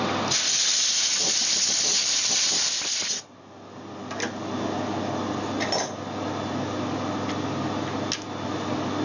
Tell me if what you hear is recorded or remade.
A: recorded